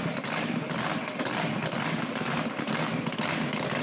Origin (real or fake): real